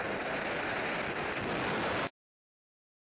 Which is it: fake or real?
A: real